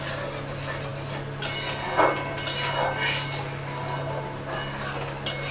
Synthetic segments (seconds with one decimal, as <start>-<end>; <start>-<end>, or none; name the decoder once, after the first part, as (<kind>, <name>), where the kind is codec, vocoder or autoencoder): none